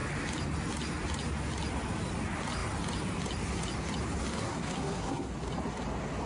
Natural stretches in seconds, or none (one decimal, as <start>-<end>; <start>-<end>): 0.0-4.3; 5.3-6.3